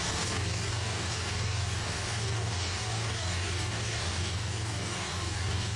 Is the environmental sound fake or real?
fake